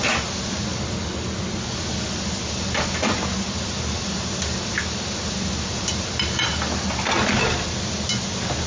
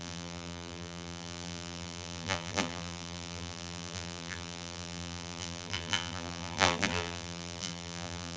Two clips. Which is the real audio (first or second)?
first